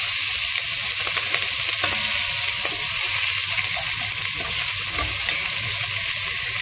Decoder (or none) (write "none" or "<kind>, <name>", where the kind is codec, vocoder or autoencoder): none